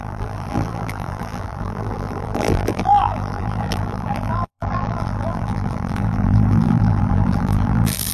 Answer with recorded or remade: remade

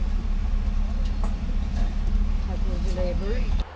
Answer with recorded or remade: recorded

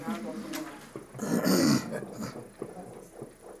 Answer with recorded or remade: recorded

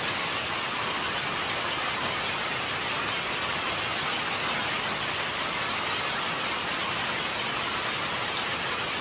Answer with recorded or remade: recorded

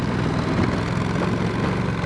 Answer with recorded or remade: recorded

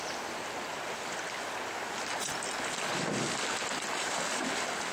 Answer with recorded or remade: recorded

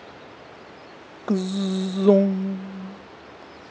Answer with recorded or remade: recorded